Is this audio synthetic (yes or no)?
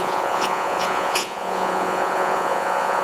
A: yes